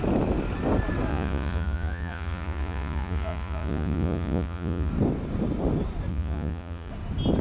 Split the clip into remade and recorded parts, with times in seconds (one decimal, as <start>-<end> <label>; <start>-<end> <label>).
0.0-1.1 recorded; 1.1-4.9 remade; 4.9-6.1 recorded; 6.1-6.9 remade; 6.9-7.4 recorded

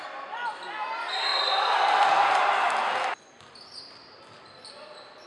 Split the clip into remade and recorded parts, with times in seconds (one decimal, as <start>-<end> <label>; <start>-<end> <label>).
0.0-5.3 recorded

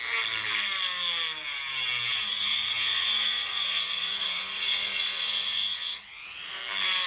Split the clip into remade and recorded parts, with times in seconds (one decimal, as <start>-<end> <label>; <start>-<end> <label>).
0.0-2.3 recorded; 2.3-6.6 remade; 6.6-7.1 recorded